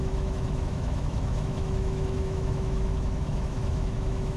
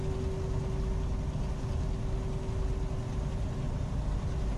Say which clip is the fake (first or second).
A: first